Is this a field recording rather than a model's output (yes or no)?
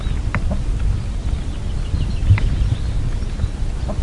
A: yes